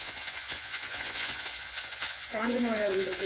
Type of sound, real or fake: fake